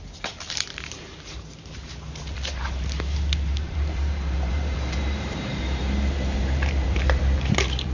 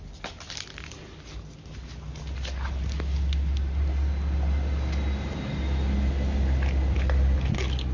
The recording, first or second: second